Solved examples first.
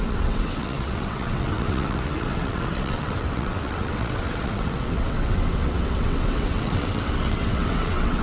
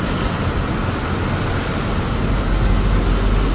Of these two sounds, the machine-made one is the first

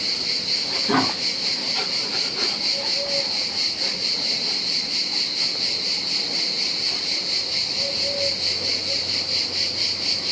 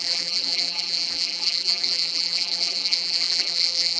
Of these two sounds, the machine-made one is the second